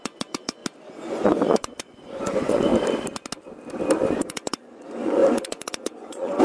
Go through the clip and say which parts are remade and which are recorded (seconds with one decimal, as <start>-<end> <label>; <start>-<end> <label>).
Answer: 0.0-0.6 remade; 0.6-1.1 recorded; 1.1-2.7 remade; 2.7-4.2 recorded; 4.2-6.4 remade